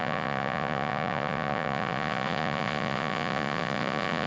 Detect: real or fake fake